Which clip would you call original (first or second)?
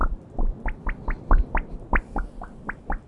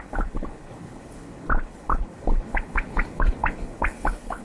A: first